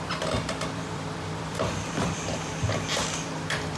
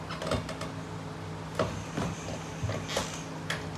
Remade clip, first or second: first